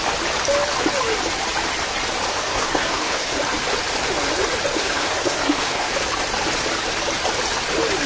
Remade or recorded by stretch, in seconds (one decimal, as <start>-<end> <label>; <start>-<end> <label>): 0.0-2.3 recorded; 2.3-3.4 remade; 3.4-4.8 recorded; 4.8-5.9 remade; 5.9-8.1 recorded